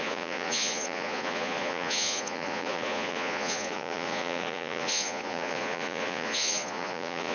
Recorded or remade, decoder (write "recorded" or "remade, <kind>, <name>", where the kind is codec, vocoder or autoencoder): remade, vocoder, Vocos